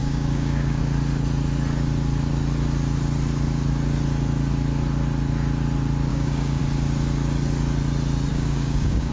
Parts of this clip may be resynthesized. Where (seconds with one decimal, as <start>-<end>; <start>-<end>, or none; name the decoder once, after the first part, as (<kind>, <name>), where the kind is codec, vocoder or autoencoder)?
0.0-0.8 (codec, DAC); 6.1-6.6; 8.3-9.1